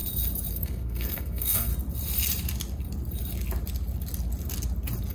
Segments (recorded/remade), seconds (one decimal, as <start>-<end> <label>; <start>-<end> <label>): 0.0-0.5 recorded; 0.5-1.7 remade; 1.7-5.1 recorded